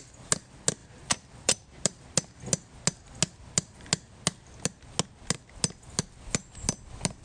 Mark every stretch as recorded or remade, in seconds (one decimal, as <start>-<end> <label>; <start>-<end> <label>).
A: 0.0-0.8 recorded; 0.8-2.0 remade; 2.0-7.2 recorded